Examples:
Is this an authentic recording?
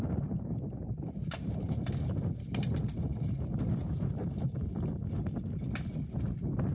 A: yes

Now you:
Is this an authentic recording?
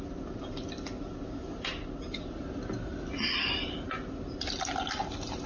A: yes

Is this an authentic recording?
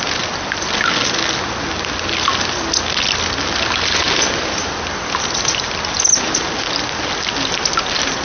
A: yes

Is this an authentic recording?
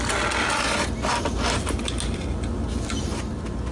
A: yes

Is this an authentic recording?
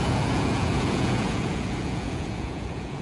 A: no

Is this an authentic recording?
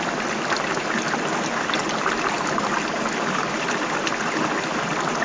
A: yes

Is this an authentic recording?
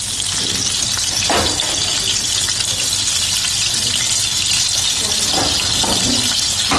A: yes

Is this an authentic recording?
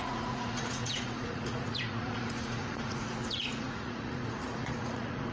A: no